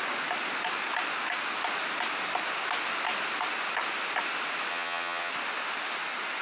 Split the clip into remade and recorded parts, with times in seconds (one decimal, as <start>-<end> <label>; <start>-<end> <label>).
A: 0.0-4.7 recorded; 4.7-5.3 remade; 5.3-6.4 recorded